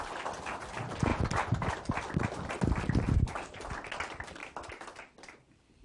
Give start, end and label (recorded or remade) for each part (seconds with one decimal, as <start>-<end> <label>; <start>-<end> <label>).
0.0-5.8 recorded